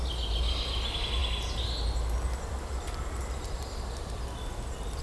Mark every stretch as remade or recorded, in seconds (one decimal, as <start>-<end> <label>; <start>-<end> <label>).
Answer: 0.0-5.0 recorded